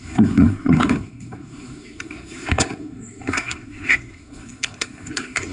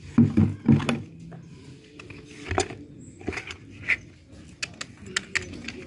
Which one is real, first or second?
second